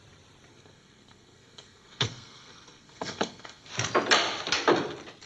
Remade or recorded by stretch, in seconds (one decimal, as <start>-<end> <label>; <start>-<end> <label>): 0.0-0.5 recorded; 0.5-3.7 remade; 3.7-5.3 recorded